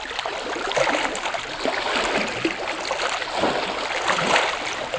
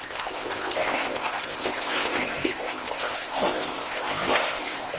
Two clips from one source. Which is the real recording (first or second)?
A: first